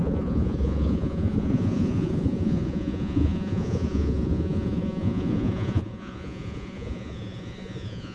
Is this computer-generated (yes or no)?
yes